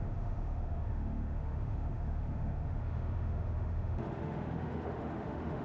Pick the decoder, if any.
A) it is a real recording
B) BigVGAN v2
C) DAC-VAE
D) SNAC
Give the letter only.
C